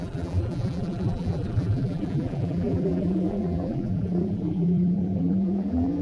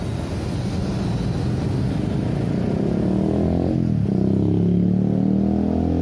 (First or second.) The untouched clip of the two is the second